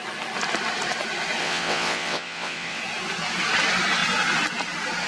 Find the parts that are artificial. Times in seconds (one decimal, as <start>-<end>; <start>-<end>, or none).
1.4-2.8